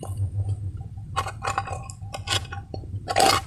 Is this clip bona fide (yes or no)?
no